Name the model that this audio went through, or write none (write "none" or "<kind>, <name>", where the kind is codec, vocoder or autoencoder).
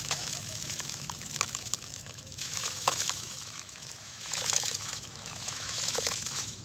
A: autoencoder, DAC-VAE